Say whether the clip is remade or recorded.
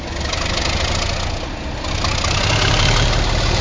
recorded